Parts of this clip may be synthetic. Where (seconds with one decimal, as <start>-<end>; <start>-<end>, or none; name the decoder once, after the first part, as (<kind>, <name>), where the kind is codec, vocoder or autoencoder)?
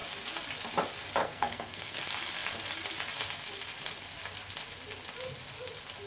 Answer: 1.2-2.0 (codec, SNAC)